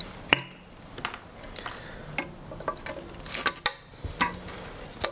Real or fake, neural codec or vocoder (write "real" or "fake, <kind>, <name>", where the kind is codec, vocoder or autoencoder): real